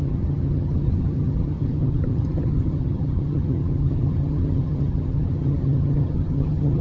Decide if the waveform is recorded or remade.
remade